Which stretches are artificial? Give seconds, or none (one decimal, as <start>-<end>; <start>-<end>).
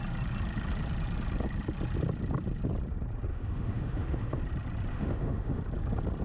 3.3-4.4; 4.9-5.6